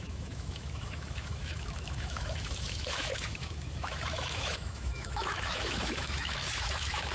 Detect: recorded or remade remade